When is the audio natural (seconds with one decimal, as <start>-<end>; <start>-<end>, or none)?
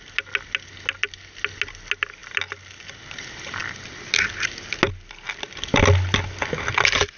0.0-7.2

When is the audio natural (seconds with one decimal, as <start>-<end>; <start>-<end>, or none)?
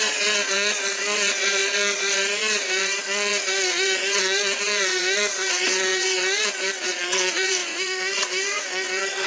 none